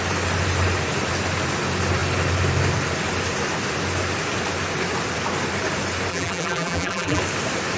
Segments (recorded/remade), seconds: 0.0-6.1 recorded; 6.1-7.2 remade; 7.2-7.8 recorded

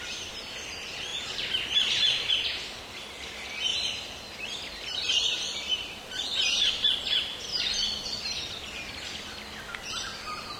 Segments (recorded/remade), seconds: 0.0-1.1 recorded; 1.1-2.3 remade; 2.3-3.7 recorded; 3.7-6.7 remade; 6.7-7.5 recorded; 7.5-8.2 remade; 8.2-10.6 recorded

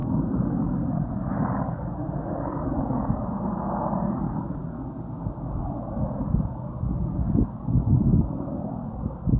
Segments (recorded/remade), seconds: 0.0-9.4 recorded

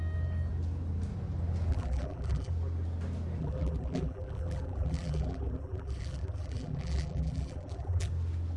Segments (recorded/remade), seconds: 0.0-1.7 recorded; 1.7-2.5 remade; 2.5-3.4 recorded; 3.4-8.1 remade; 8.1-8.6 recorded